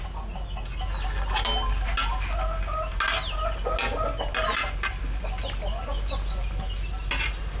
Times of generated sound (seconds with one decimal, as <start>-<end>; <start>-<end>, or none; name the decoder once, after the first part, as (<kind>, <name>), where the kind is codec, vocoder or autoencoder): none